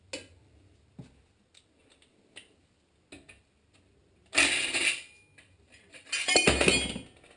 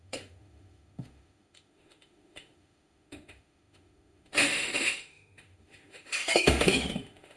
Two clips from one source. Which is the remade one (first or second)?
second